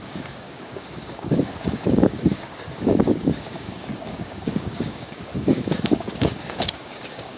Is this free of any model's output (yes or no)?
no